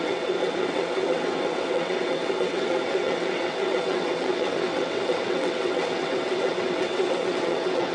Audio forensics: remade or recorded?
remade